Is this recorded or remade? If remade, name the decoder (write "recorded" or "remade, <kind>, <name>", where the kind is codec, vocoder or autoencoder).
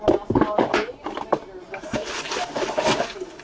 recorded